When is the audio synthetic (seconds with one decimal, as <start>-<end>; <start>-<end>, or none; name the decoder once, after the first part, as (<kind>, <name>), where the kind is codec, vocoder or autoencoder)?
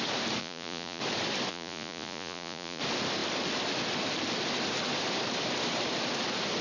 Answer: 0.4-1.0 (vocoder, Vocos); 1.5-2.8